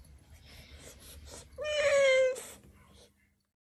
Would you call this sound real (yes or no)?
yes